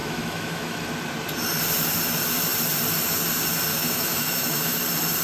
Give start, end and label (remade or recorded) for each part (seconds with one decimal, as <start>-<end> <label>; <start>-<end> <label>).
0.0-0.9 remade; 0.9-3.7 recorded; 3.7-4.8 remade; 4.8-5.2 recorded

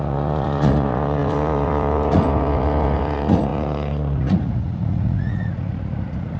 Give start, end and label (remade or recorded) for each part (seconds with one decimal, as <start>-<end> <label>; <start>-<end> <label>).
0.0-6.4 remade

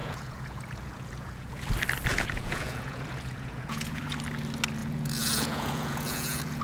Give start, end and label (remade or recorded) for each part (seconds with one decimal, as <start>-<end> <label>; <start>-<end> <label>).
0.0-1.6 remade; 1.6-2.1 recorded; 2.1-4.0 remade; 4.0-4.8 recorded; 4.8-6.6 remade

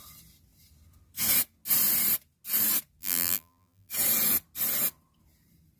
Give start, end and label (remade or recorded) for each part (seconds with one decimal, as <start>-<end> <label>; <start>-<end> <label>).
0.0-3.0 recorded; 3.0-3.9 remade; 3.9-5.8 recorded